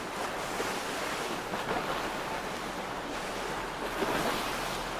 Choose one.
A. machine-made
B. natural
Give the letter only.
B